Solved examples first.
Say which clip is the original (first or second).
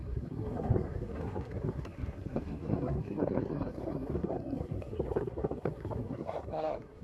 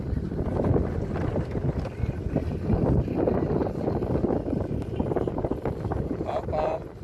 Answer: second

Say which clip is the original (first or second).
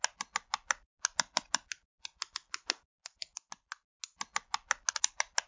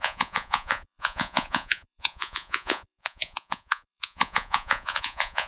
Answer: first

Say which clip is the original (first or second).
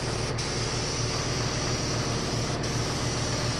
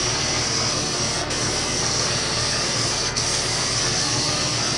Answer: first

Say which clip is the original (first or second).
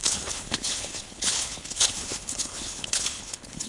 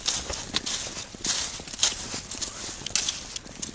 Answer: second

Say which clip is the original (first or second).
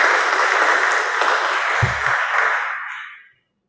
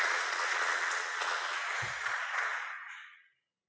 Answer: first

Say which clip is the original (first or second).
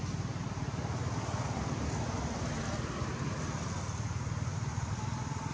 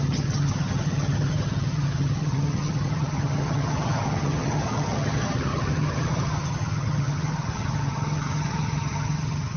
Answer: first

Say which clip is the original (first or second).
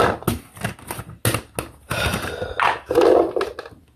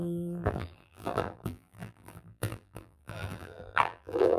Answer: first